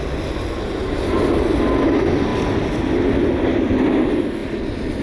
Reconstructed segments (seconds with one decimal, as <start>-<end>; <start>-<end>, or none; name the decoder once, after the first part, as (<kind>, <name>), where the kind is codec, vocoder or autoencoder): none